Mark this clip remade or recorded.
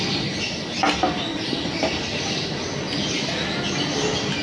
recorded